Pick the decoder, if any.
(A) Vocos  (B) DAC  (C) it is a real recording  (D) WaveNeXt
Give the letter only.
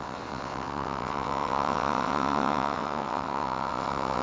D